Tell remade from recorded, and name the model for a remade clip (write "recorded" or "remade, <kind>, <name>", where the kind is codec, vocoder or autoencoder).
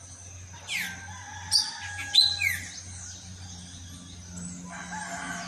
recorded